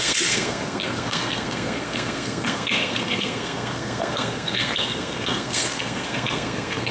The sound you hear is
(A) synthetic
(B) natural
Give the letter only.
A